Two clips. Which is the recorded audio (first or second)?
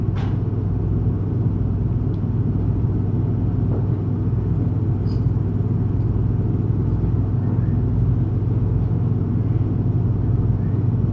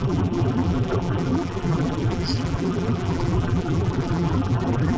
first